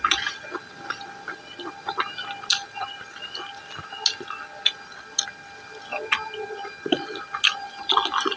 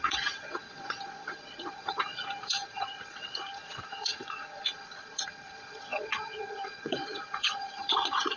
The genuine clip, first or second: first